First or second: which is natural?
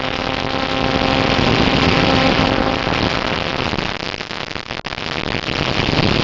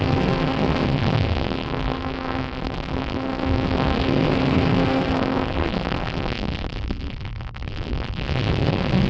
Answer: first